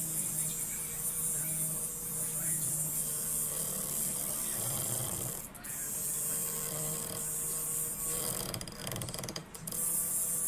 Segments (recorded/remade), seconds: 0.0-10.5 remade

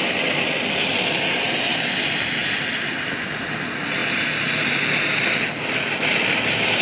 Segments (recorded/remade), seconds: 0.0-6.8 recorded

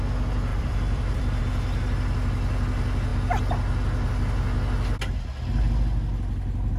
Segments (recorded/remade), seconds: 0.0-0.5 recorded; 0.5-1.4 remade; 1.4-6.8 recorded

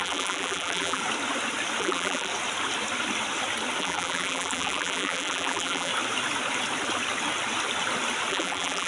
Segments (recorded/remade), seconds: 0.0-1.0 remade; 1.0-1.8 recorded; 1.8-2.3 remade; 2.3-3.8 recorded; 3.8-5.9 remade; 5.9-8.3 recorded; 8.3-8.9 remade

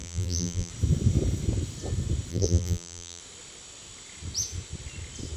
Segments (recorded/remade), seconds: 0.0-0.7 remade; 0.7-2.3 recorded; 2.3-3.2 remade; 3.2-5.4 recorded